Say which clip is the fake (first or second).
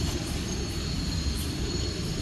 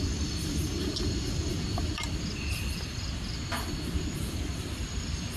second